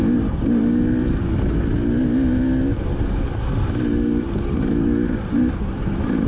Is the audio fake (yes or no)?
no